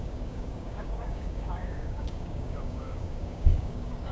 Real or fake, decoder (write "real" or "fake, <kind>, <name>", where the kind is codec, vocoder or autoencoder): fake, codec, DAC